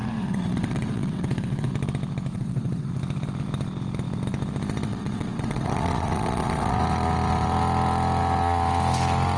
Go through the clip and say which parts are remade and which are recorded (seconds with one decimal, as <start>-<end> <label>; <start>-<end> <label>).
0.0-1.7 remade; 1.7-2.3 recorded; 2.3-2.9 remade; 2.9-4.9 recorded; 4.9-6.8 remade; 6.8-9.4 recorded

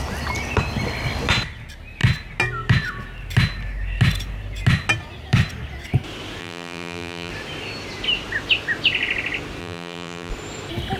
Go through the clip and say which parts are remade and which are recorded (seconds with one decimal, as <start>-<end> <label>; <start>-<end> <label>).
0.0-6.4 recorded; 6.4-7.3 remade; 7.3-9.6 recorded; 9.6-10.3 remade; 10.3-11.0 recorded

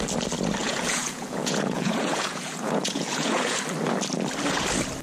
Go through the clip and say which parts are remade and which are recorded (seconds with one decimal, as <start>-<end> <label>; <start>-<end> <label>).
0.0-0.6 recorded; 0.6-3.6 remade; 3.6-5.0 recorded